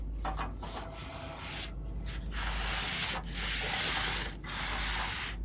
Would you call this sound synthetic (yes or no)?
no